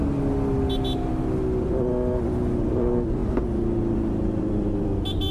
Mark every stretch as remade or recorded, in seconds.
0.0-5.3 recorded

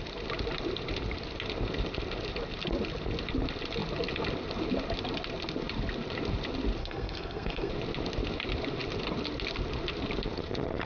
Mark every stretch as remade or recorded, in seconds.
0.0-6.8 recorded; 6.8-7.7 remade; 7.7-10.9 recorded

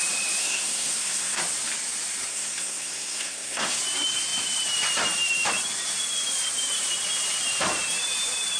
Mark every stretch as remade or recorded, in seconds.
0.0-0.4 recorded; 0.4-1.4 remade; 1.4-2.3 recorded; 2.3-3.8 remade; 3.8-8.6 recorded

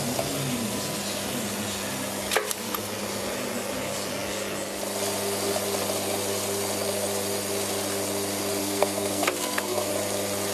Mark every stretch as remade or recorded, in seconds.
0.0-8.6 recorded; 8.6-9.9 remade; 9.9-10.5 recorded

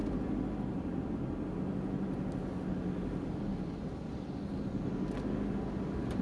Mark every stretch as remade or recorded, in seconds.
0.0-6.2 recorded

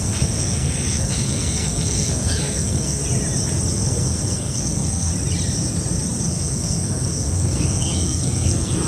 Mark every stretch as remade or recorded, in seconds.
0.0-3.0 remade; 3.0-3.7 recorded; 3.7-5.1 remade; 5.1-6.2 recorded; 6.2-8.9 remade